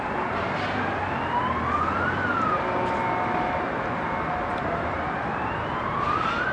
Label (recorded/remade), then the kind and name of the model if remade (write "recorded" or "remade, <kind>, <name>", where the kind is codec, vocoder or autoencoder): recorded